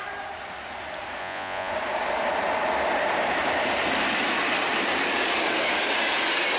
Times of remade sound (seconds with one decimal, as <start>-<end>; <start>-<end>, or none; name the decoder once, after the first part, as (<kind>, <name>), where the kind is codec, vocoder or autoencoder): 1.2-1.7 (vocoder, Vocos)